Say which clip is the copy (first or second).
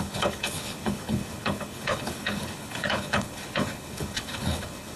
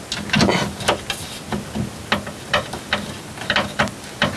first